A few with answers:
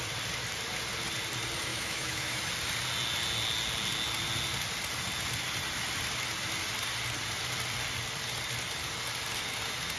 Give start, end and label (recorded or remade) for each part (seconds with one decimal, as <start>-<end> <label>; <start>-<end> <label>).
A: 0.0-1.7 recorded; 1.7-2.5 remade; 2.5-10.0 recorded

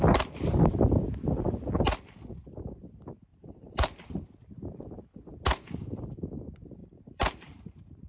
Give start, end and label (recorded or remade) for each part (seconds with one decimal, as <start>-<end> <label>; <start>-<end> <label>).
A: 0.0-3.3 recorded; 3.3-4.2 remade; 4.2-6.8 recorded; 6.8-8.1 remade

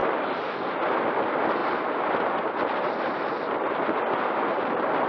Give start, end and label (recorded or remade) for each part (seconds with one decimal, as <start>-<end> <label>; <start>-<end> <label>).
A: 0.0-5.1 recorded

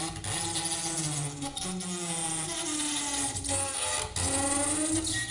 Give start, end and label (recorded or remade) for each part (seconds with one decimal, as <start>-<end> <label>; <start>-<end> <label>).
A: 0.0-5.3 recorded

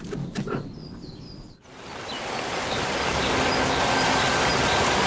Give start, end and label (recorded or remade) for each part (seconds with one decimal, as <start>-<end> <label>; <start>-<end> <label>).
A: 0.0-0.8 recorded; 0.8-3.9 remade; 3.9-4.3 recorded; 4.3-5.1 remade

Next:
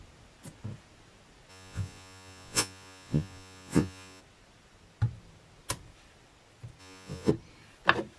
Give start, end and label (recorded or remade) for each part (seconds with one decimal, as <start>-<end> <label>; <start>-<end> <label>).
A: 0.0-1.5 recorded; 1.5-4.2 remade; 4.2-6.8 recorded; 6.8-7.3 remade; 7.3-8.2 recorded